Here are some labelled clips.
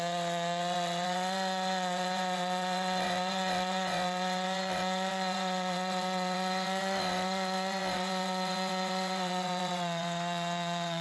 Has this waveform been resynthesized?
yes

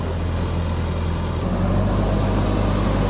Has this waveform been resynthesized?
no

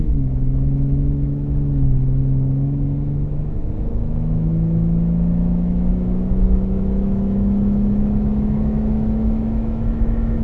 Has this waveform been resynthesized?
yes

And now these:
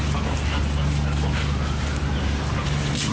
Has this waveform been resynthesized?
no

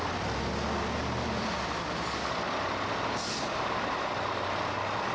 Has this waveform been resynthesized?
no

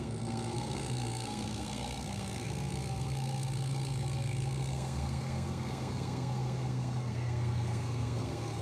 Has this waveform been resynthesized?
yes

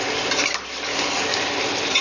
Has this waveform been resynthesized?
no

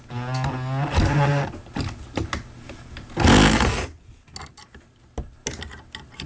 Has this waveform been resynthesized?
no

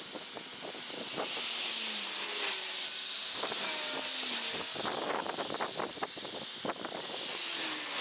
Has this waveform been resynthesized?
no